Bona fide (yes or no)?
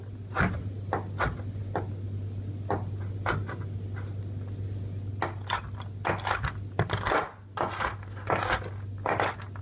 yes